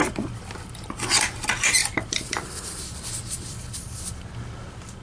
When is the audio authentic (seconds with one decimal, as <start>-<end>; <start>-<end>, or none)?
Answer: 0.0-1.8; 4.0-5.0